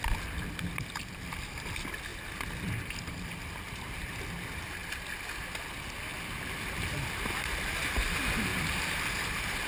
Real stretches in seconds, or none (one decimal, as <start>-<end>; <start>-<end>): 0.0-4.8; 5.4-6.1; 8.0-8.5